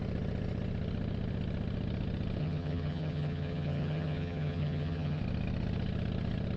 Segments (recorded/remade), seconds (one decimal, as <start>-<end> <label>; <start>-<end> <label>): 0.0-2.4 recorded; 2.4-5.2 remade; 5.2-6.6 recorded